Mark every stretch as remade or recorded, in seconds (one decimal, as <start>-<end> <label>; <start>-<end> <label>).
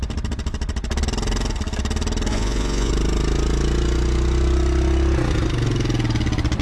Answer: 0.0-2.3 recorded; 2.3-2.9 remade; 2.9-6.6 recorded